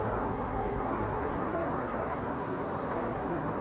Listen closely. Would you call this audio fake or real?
fake